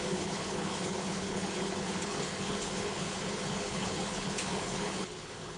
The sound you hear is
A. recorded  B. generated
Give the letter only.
B